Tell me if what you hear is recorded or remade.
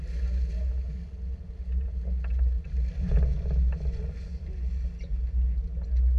recorded